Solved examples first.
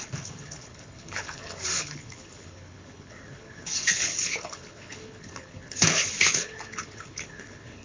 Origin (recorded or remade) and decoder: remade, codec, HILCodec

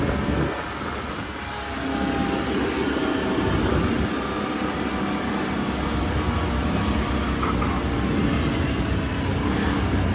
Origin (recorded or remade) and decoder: recorded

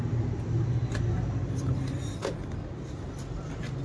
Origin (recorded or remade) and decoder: recorded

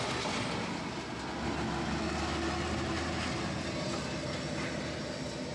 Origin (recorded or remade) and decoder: recorded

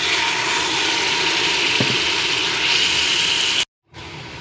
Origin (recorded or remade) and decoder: recorded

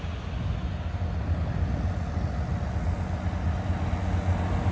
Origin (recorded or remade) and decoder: recorded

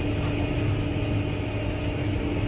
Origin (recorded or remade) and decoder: recorded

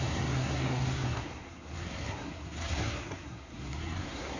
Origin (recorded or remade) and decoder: remade, codec, SNAC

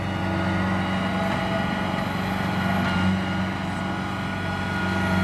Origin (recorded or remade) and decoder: recorded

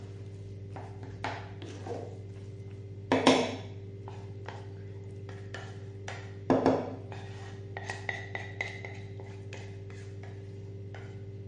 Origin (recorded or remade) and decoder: recorded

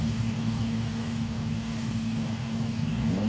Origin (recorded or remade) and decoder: remade, codec, DAC